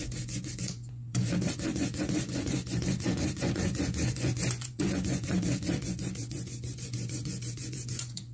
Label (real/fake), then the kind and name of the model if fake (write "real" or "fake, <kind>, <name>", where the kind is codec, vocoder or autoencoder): fake, vocoder, Vocos